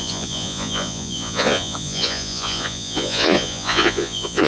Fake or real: fake